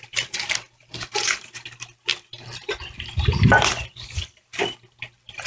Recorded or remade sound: recorded